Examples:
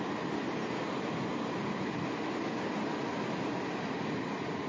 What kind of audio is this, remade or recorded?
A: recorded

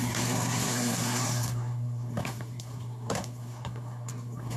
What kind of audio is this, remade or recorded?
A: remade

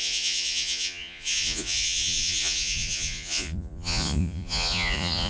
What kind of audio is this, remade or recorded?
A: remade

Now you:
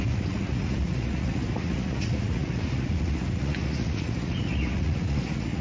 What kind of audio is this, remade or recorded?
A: remade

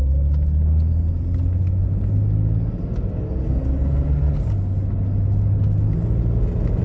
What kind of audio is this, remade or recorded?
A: recorded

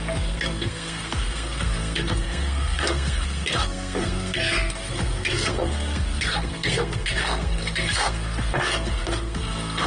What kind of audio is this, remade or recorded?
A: remade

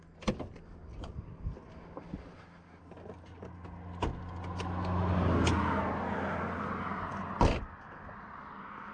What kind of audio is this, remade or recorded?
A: recorded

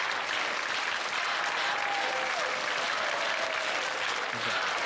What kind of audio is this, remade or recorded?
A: recorded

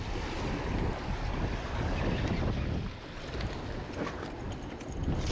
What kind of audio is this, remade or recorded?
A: recorded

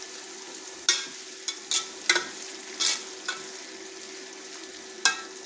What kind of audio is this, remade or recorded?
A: recorded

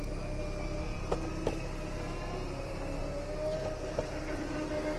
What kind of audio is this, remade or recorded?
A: recorded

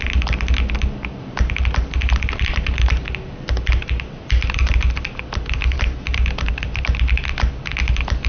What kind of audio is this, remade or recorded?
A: recorded